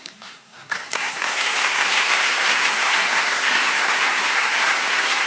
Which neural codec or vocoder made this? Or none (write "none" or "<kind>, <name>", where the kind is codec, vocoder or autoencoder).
codec, SNAC